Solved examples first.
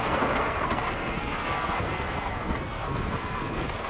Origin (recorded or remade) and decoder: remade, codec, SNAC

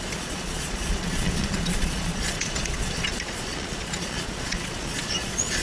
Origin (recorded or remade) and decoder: remade, vocoder, Vocos